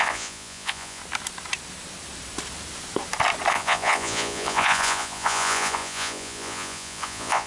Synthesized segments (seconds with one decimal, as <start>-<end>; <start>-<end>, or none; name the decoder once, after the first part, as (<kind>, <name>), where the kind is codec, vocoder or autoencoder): 0.0-1.0 (vocoder, Vocos); 3.5-7.5